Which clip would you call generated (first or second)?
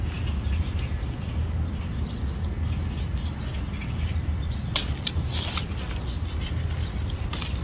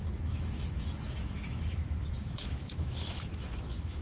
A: second